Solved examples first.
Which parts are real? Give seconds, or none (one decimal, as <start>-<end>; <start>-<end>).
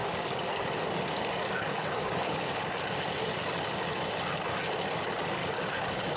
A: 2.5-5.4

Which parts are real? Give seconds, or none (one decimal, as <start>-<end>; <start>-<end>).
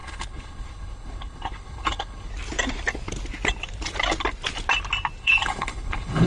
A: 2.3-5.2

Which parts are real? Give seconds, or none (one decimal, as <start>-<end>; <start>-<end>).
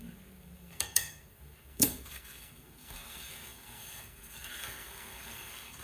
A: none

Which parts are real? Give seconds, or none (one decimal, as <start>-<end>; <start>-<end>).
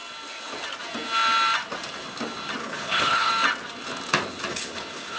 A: 0.0-2.6; 3.3-4.5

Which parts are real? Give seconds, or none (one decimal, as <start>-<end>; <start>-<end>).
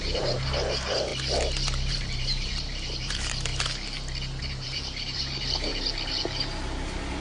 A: 1.1-1.9; 3.5-4.4; 5.7-7.2